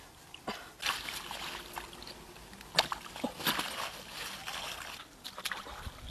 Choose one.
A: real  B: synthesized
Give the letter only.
A